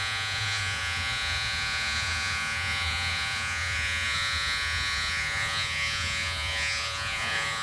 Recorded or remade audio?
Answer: remade